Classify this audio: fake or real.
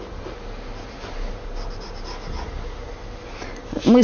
real